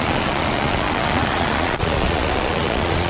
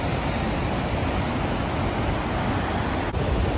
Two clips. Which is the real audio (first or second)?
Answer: second